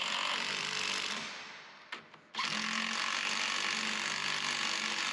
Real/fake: real